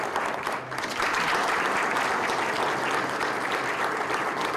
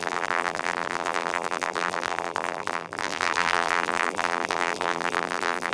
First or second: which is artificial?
second